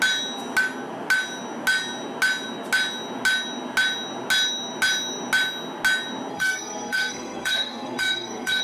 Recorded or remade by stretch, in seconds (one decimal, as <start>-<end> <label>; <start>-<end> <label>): 0.0-6.3 recorded; 6.3-8.6 remade